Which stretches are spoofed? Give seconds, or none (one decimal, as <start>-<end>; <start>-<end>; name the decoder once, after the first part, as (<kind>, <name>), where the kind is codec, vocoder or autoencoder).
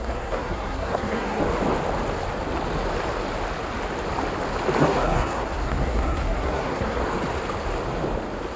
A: 0.0-1.4 (codec, SNAC); 4.8-7.0